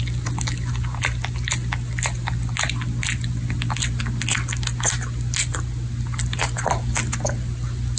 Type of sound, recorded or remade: recorded